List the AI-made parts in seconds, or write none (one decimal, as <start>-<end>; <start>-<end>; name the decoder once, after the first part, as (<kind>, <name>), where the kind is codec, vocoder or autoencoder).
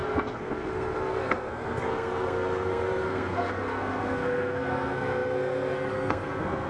0.0-6.7 (codec, SNAC)